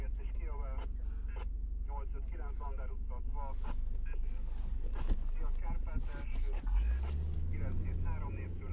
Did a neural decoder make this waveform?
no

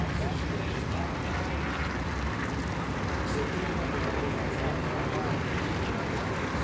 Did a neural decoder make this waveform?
no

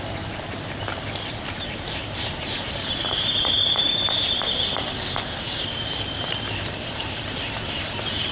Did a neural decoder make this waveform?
yes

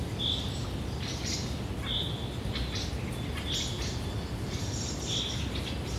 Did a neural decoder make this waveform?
no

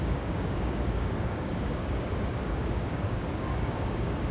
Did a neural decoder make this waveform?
yes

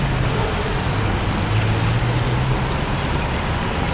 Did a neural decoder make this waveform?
no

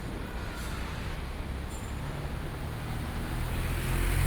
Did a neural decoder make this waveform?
no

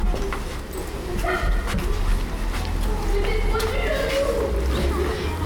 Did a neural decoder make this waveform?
no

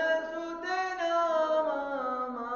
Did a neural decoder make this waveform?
no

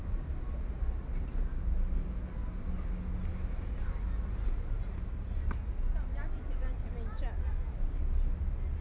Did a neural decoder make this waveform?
no